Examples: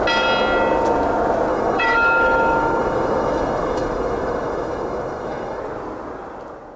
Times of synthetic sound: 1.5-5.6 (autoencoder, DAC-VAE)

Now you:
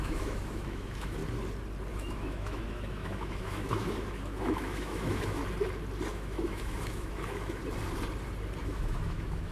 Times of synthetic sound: 0.0-1.2 (autoencoder, DAC-VAE); 1.9-5.4; 6.1-7.6; 8.6-9.5

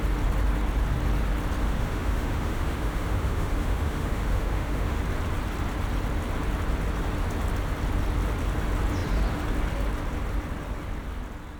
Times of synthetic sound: 1.6-5.0 (autoencoder, DAC-VAE)

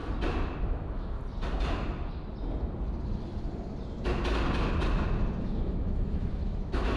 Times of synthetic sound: 0.6-1.2 (autoencoder, DAC-VAE); 5.4-7.0

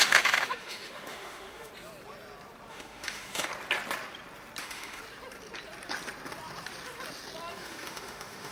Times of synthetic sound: 0.0-1.7 (autoencoder, DAC-VAE); 2.7-3.5; 4.6-5.0; 7.5-8.5